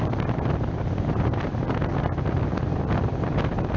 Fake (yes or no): no